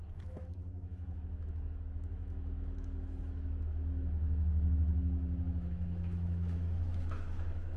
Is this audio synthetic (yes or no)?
yes